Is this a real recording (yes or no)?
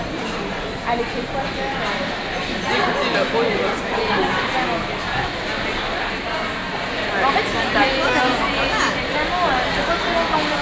yes